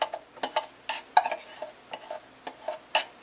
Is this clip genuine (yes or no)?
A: yes